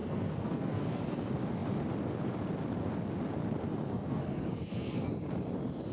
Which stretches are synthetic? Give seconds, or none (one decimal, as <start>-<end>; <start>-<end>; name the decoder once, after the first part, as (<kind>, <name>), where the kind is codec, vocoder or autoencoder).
0.0-1.0 (codec, SNAC); 3.9-5.1